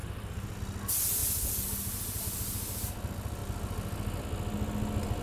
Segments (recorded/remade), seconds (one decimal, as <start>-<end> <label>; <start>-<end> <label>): 0.0-5.2 recorded